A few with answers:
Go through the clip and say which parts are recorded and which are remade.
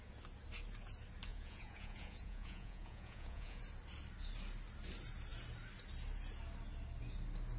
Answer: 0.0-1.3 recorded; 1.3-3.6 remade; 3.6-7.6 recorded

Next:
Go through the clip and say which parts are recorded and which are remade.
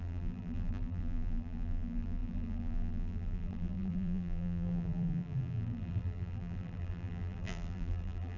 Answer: 0.0-8.4 remade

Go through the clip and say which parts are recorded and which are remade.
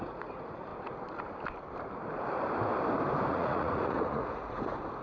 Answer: 0.0-0.7 remade; 0.7-3.3 recorded; 3.3-5.0 remade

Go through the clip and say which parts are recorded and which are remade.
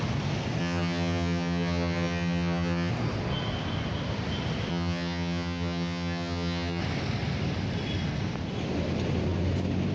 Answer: 0.0-0.6 recorded; 0.6-2.9 remade; 2.9-4.7 recorded; 4.7-6.8 remade; 6.8-9.9 recorded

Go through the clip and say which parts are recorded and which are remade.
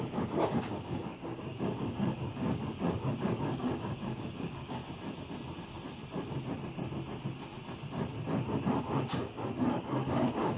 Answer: 0.0-4.8 remade; 4.8-8.8 recorded; 8.8-10.6 remade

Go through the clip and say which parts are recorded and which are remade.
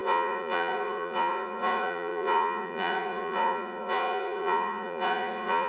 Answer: 0.0-5.7 remade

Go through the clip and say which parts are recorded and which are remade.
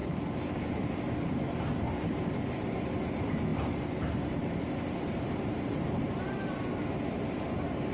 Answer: 0.0-7.9 remade